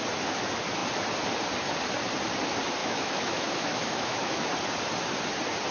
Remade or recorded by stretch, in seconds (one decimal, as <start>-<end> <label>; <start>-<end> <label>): 0.0-2.8 recorded; 2.8-4.5 remade; 4.5-5.7 recorded